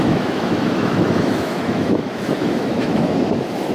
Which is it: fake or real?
fake